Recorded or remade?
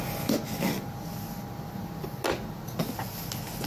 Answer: recorded